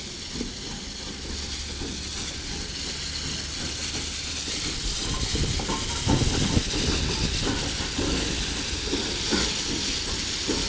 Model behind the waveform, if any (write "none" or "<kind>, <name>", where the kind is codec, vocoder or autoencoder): none